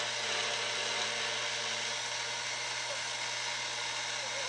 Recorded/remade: recorded